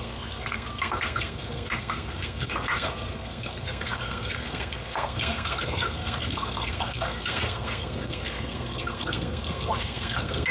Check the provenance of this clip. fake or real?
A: fake